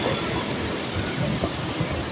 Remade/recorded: recorded